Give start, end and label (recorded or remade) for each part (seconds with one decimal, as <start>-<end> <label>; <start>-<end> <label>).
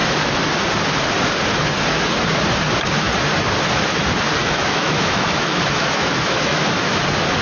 0.0-4.4 recorded; 4.4-7.0 remade; 7.0-7.4 recorded